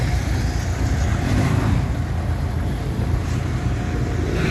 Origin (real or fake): real